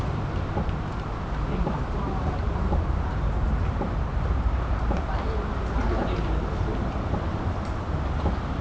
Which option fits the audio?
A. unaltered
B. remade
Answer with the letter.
B